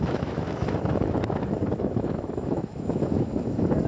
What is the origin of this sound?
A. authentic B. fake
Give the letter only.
B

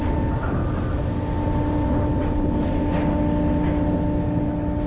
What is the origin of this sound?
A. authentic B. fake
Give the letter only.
A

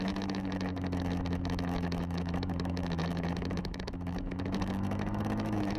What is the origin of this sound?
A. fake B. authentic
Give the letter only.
A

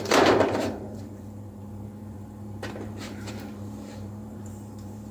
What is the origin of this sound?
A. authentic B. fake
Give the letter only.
B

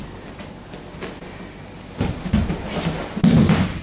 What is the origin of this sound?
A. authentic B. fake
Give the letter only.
A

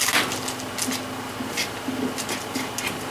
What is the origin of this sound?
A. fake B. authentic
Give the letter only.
B